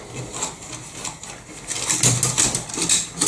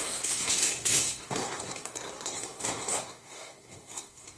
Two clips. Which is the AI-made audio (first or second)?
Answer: second